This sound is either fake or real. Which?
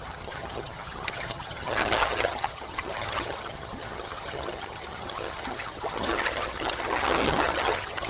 fake